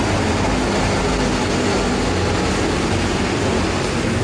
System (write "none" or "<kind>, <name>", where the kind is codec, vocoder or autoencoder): none